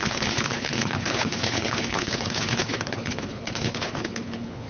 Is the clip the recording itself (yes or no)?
no